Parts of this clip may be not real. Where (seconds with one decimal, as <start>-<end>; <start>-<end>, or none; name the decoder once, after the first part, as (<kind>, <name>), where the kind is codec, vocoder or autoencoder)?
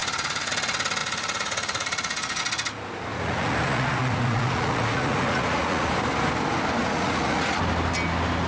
0.0-0.5 (vocoder, Vocos); 1.0-2.4; 3.1-5.9; 6.8-7.6